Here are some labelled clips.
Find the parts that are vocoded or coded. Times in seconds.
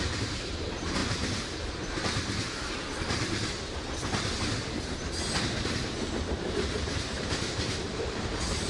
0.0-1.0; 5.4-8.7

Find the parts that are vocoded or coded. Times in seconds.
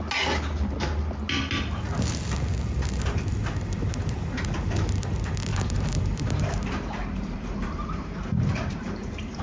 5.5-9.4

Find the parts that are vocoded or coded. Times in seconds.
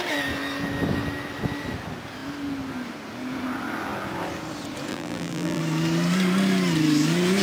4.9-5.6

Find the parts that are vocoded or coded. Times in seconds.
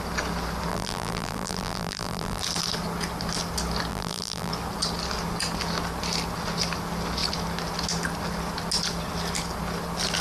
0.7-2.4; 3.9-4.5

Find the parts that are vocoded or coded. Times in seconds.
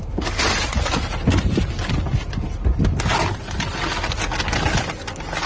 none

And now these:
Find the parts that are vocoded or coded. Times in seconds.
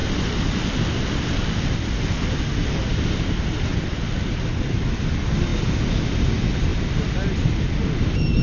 0.0-0.6; 2.9-3.7; 6.7-7.8